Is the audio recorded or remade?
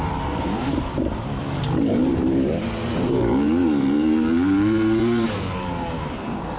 remade